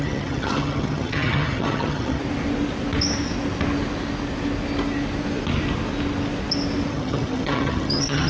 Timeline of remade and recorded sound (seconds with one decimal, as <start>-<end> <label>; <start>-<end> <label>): 0.0-2.2 remade; 2.2-6.9 recorded; 6.9-8.3 remade